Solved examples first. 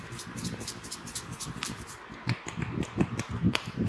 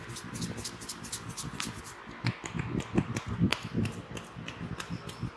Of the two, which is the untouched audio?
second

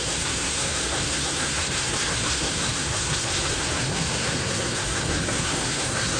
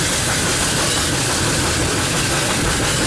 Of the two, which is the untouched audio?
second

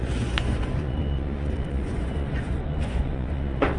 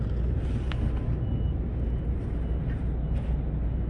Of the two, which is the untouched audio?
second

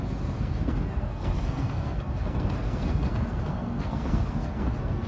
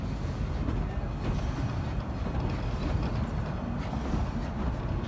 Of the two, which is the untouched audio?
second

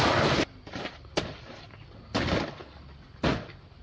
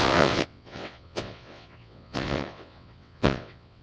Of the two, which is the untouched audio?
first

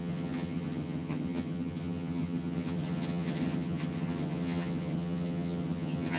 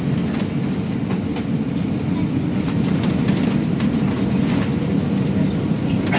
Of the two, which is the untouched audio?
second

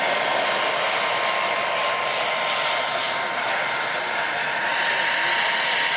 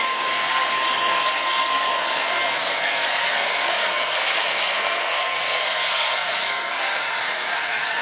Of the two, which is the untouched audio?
first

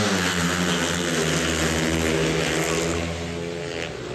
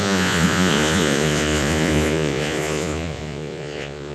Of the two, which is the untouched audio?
first